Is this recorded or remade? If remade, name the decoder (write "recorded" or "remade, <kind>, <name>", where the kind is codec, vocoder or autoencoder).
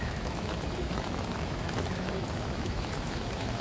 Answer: remade, autoencoder, DAC-VAE